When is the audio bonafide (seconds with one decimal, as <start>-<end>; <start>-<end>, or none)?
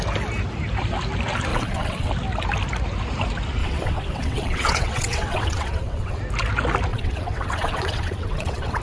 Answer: 0.0-1.5; 2.1-3.6; 6.2-6.9